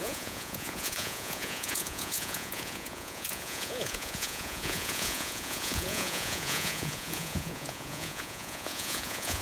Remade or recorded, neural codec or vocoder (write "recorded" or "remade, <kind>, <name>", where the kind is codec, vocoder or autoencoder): remade, vocoder, Vocos